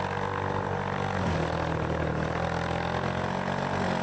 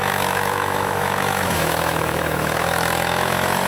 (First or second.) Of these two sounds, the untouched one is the first